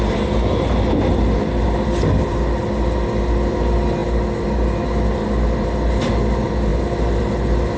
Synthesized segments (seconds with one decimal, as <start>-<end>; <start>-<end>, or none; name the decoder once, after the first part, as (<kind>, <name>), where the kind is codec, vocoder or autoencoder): none